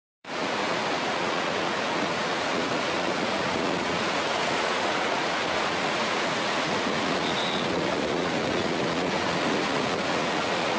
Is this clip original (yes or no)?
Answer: no